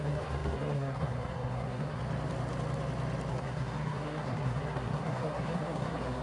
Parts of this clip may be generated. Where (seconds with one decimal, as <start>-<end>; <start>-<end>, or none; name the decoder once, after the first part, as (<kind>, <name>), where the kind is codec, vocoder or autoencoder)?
0.0-2.0 (codec, SNAC); 3.3-6.2